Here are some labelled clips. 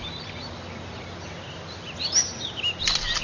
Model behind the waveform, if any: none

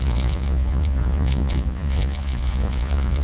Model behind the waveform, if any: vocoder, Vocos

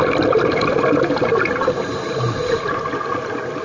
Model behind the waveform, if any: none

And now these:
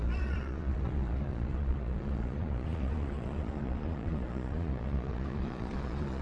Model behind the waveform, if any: vocoder, Vocos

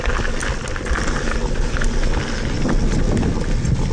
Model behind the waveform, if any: none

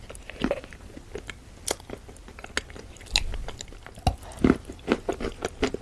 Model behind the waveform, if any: none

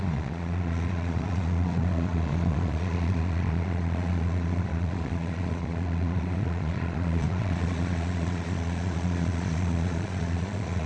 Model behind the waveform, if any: vocoder, Vocos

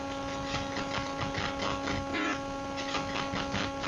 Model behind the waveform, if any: none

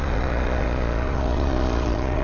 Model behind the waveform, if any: vocoder, Vocos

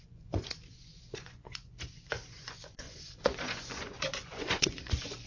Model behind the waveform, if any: vocoder, Vocos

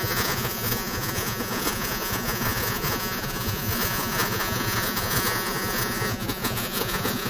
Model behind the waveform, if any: vocoder, Vocos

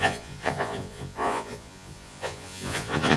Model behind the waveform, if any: vocoder, Vocos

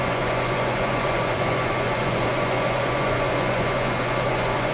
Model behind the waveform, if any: vocoder, Vocos